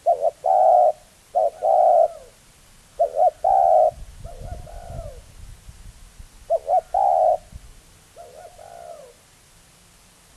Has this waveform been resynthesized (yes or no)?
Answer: no